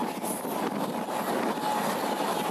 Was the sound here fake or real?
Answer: real